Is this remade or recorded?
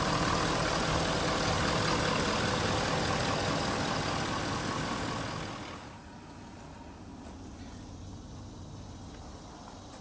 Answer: recorded